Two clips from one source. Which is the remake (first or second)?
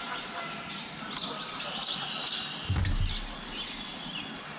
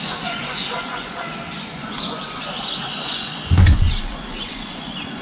second